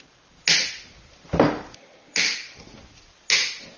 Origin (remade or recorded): recorded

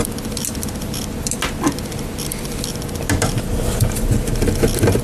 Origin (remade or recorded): recorded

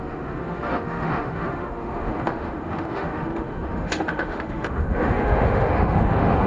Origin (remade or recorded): remade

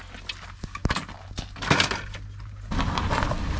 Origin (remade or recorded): recorded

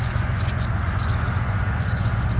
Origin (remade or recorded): remade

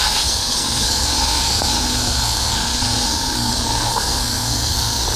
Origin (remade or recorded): remade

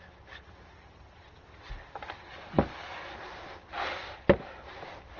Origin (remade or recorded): recorded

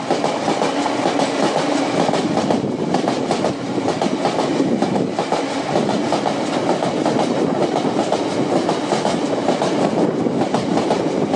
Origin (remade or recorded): recorded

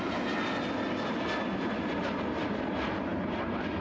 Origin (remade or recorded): recorded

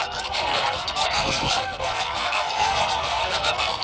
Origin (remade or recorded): remade